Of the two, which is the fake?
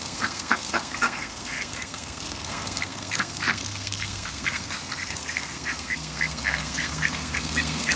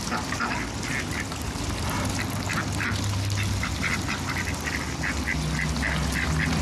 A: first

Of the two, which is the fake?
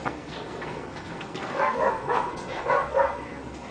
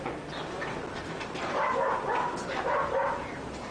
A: first